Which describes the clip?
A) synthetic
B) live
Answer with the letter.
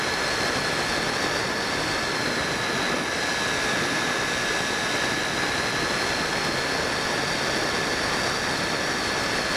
B